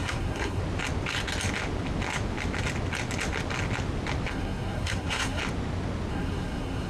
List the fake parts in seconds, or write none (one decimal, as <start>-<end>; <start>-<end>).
0.0-0.6; 4.3-5.4; 6.1-6.9